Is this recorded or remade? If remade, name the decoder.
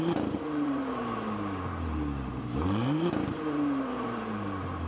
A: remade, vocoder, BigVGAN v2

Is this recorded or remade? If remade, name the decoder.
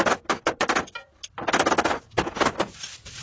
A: recorded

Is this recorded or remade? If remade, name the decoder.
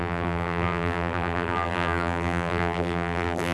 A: remade, vocoder, BigVGAN v2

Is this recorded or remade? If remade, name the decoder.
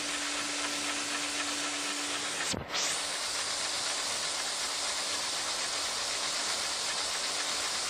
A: recorded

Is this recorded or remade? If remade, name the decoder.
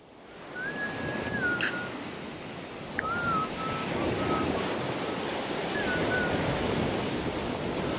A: recorded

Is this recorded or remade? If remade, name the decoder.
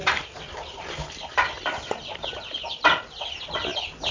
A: recorded